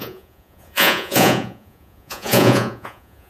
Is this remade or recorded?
remade